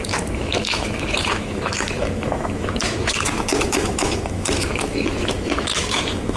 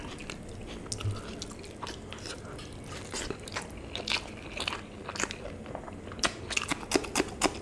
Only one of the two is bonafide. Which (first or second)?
second